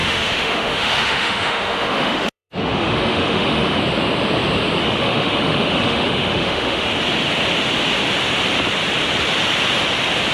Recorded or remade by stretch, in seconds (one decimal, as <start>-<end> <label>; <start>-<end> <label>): 0.0-3.8 remade; 3.8-4.8 recorded; 4.8-6.9 remade; 6.9-10.3 recorded